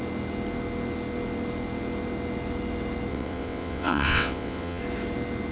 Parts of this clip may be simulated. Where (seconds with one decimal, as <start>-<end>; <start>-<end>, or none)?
3.1-4.8